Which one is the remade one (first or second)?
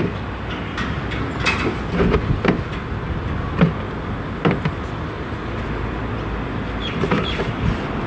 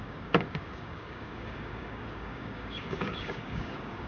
second